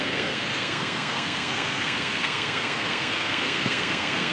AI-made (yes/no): yes